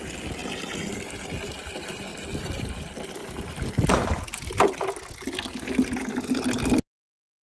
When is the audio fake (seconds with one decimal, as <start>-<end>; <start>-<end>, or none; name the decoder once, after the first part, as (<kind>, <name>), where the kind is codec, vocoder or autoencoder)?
none